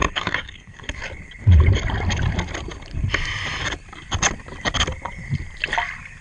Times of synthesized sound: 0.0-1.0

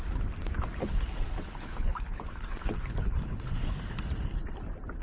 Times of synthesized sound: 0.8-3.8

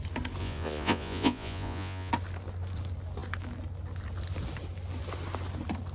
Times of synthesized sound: 0.4-2.1